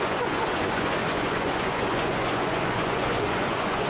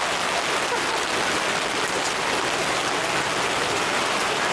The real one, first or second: second